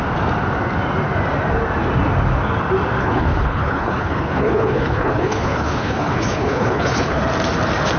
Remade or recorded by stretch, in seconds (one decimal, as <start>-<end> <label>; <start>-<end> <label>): 0.0-3.0 recorded; 3.0-7.2 remade; 7.2-8.0 recorded